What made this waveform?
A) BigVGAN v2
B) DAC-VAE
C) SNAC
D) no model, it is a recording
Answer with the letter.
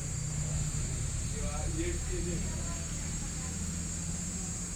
D